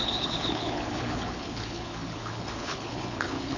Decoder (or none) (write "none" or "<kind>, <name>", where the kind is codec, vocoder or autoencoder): codec, HILCodec